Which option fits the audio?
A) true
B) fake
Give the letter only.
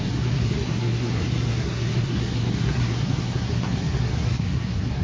B